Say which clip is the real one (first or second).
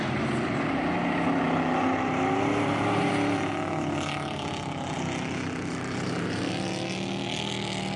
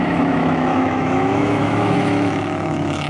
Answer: first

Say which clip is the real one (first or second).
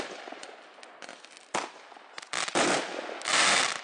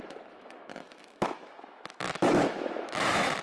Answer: first